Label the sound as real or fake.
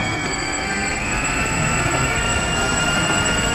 fake